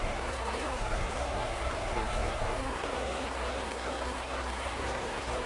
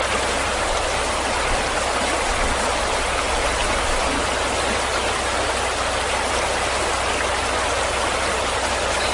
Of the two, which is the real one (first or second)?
second